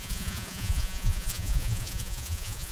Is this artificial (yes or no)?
yes